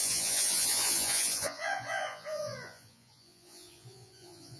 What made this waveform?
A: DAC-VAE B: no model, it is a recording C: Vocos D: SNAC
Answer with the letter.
C